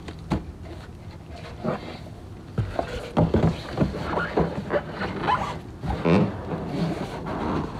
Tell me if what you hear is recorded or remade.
recorded